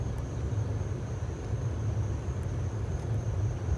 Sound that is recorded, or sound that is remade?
recorded